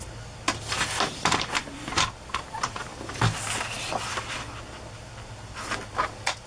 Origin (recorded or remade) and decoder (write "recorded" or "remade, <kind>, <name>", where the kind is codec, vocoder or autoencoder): recorded